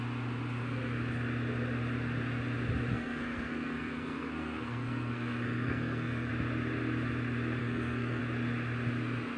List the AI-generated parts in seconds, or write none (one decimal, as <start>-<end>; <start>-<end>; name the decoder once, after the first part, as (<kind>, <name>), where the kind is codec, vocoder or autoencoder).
2.9-6.3 (codec, SNAC); 7.6-8.2